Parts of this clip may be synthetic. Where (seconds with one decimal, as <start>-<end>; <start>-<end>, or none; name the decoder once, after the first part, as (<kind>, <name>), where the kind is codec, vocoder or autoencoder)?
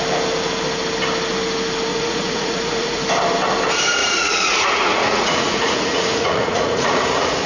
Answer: 1.9-3.0 (vocoder, Vocos); 4.0-7.5